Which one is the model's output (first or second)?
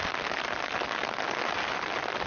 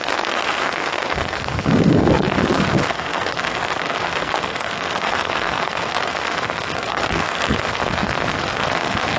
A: second